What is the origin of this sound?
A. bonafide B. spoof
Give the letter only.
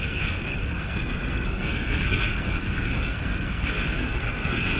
B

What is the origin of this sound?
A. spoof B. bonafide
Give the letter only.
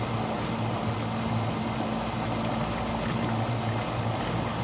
B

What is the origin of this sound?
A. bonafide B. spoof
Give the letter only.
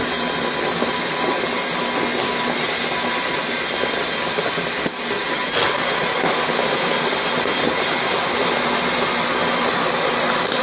A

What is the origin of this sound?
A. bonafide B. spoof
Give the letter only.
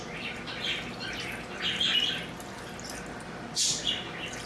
A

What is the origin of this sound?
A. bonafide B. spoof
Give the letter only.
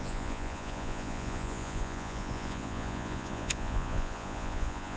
B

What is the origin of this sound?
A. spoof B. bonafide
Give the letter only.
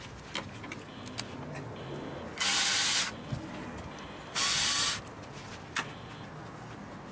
B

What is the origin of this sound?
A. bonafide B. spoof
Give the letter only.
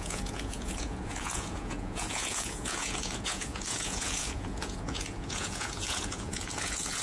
B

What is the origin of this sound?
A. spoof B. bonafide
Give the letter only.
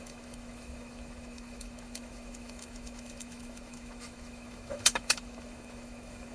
A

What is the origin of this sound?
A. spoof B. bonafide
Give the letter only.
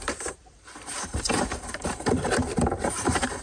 A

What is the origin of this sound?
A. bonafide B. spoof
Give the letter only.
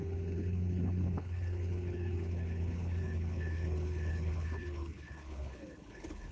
B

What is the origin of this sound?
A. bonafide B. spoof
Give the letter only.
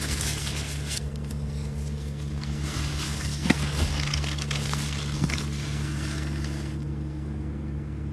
B